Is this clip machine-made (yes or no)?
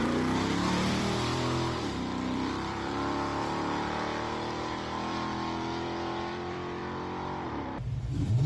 yes